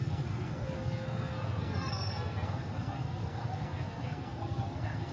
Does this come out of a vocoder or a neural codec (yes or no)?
yes